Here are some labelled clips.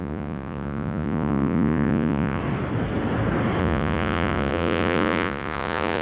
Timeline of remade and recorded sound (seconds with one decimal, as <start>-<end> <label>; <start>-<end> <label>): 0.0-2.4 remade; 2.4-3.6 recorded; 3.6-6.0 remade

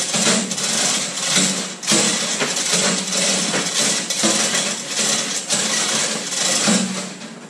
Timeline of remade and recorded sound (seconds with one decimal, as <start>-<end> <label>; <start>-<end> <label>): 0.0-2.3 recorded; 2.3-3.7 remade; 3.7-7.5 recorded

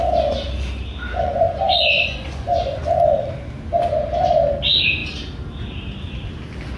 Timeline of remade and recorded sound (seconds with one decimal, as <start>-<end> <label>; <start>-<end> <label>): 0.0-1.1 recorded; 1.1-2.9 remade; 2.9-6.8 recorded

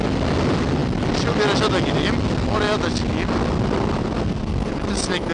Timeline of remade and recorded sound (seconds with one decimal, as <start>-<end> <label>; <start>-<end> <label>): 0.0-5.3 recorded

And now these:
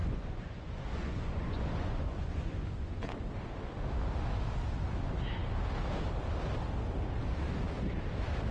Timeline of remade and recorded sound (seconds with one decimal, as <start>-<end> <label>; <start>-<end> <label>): 0.0-3.1 remade; 3.1-8.5 recorded